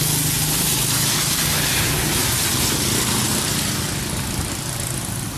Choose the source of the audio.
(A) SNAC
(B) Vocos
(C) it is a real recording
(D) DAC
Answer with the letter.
C